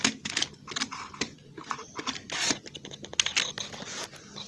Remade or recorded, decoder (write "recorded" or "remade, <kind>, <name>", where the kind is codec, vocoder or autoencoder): recorded